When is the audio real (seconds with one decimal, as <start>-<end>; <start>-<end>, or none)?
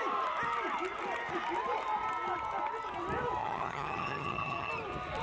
0.0-3.4; 4.7-5.2